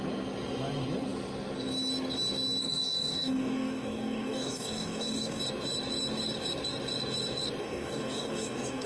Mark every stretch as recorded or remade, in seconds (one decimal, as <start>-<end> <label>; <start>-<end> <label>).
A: 0.0-2.6 recorded; 2.6-5.4 remade; 5.4-7.6 recorded; 7.6-8.9 remade